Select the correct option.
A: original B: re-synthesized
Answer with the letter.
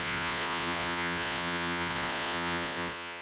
B